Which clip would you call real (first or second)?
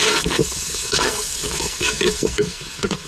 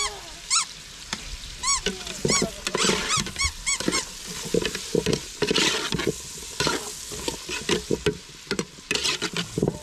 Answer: second